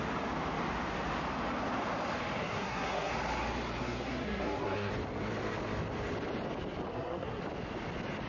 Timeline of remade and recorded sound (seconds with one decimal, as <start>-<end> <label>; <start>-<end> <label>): 0.0-2.4 recorded; 2.4-3.1 remade; 3.1-3.8 recorded; 3.8-4.9 remade; 4.9-6.9 recorded; 6.9-7.4 remade; 7.4-8.3 recorded